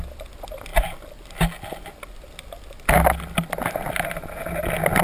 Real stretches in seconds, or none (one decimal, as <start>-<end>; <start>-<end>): 0.0-5.0